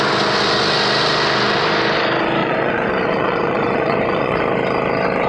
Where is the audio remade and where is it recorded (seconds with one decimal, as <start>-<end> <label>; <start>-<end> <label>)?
0.0-2.4 recorded; 2.4-4.4 remade; 4.4-5.3 recorded